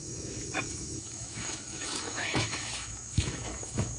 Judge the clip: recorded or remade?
remade